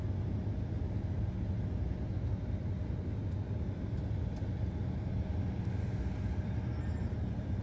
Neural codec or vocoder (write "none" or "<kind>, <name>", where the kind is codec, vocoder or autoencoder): none